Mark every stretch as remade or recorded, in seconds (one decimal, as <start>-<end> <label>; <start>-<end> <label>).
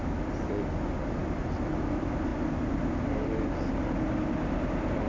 0.0-5.1 recorded